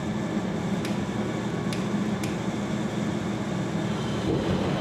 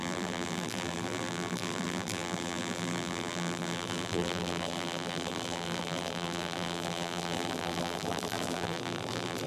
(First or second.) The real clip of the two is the first